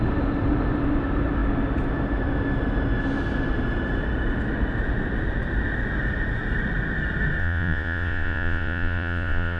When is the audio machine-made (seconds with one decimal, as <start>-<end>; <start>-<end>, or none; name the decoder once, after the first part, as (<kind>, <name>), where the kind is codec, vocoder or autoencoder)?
7.4-9.6 (vocoder, Vocos)